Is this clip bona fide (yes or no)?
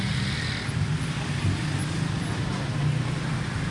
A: yes